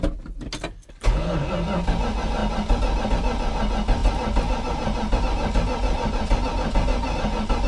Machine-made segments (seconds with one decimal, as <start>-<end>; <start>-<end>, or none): 0.9-1.5